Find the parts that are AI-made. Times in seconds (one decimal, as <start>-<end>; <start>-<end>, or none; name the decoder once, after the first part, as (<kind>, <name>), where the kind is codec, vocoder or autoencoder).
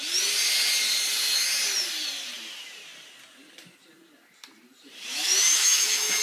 5.1-6.2 (autoencoder, DAC-VAE)